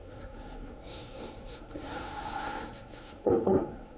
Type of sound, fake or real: fake